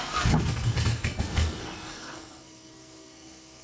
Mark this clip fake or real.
fake